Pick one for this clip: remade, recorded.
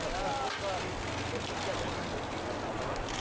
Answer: recorded